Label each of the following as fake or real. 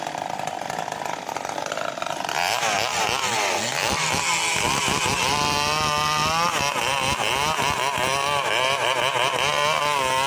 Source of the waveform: real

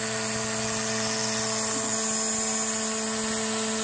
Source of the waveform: real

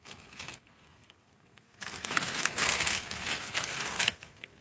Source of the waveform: fake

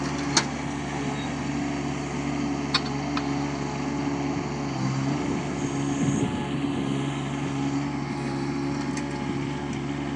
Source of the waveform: real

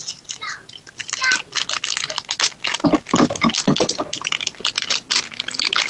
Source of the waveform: real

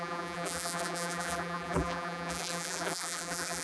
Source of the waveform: fake